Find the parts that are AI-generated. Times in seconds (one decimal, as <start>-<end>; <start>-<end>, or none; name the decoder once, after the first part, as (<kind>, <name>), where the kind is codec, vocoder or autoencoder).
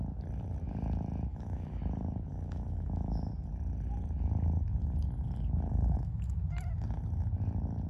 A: 1.3-1.8 (autoencoder, DAC-VAE); 2.3-3.3; 5.7-6.3